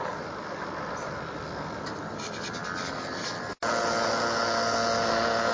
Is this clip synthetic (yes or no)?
no